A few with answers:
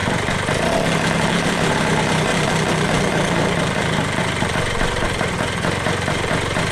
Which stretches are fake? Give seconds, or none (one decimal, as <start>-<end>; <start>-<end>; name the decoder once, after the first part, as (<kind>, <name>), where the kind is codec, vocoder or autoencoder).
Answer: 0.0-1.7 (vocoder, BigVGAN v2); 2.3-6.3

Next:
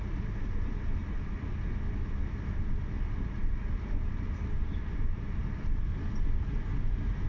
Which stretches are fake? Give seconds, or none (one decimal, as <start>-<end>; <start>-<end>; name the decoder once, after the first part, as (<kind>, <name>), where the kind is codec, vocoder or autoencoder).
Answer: 0.0-1.0 (vocoder, BigVGAN v2); 2.9-5.9

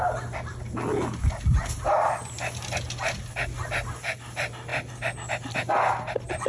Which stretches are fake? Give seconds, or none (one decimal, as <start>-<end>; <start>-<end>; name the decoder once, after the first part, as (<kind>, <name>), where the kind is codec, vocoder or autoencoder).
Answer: none